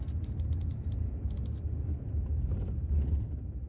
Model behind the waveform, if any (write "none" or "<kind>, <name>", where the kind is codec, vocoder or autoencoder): none